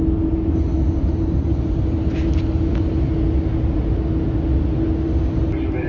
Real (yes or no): yes